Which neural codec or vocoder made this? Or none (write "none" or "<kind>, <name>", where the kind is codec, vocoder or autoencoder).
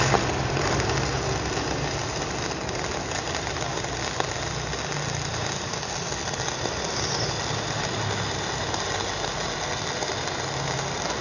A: none